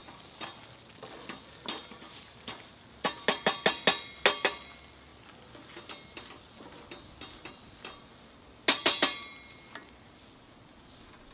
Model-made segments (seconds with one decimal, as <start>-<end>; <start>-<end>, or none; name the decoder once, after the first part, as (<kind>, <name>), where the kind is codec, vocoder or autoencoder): 1.8-2.8 (vocoder, BigVGAN v2)